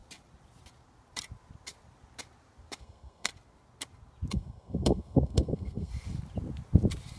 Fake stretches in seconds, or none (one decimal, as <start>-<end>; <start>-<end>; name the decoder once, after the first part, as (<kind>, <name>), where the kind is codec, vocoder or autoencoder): 2.8-3.3 (codec, SNAC); 4.3-5.9